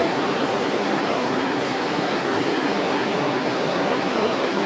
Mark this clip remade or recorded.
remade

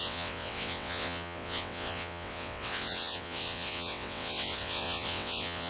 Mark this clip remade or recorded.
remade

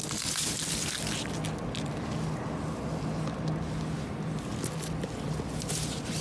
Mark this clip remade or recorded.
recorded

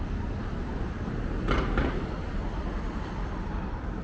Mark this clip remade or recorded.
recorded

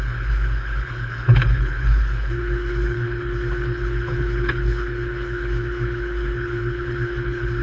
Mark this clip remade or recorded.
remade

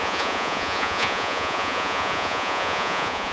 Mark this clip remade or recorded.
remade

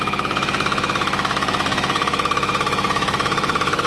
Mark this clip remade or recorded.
remade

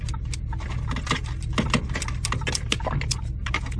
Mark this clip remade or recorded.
recorded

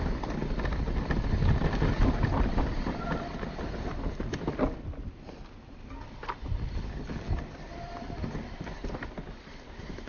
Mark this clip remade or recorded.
recorded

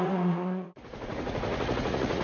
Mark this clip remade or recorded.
remade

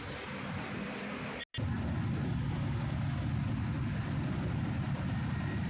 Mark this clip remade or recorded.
recorded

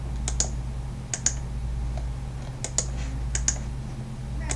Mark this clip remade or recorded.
recorded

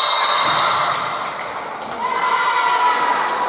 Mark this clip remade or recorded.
recorded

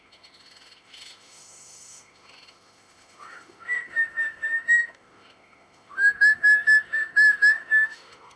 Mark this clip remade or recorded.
remade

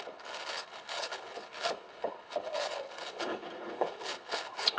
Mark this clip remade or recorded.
remade